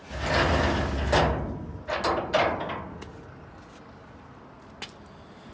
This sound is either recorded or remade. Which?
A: recorded